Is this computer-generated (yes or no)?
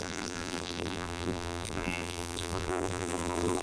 yes